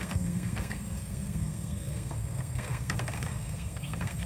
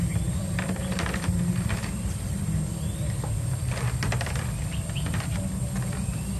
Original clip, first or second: second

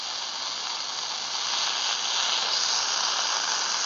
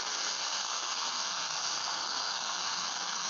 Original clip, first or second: first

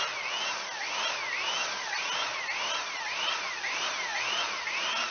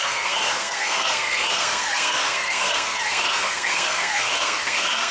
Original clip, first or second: first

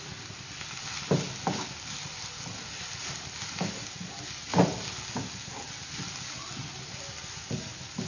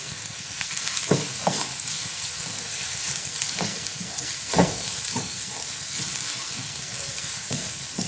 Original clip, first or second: first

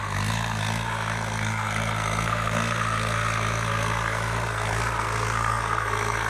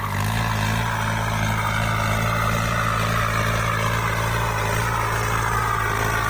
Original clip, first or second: second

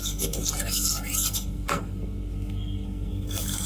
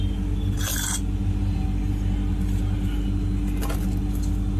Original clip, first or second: second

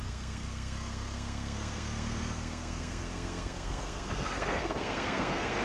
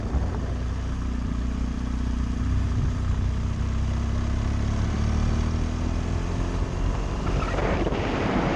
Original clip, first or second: second